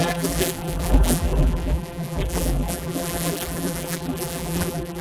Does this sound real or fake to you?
fake